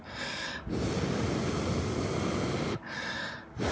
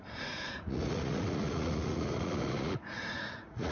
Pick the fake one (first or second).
second